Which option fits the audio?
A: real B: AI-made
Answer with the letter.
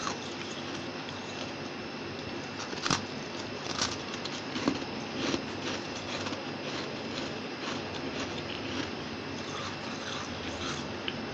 A